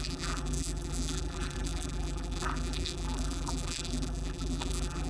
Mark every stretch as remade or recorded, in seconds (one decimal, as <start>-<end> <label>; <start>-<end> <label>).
0.0-5.1 remade